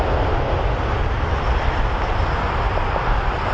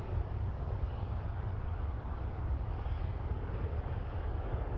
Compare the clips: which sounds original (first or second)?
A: first